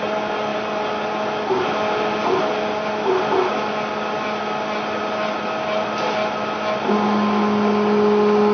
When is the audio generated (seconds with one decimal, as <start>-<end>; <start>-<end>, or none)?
none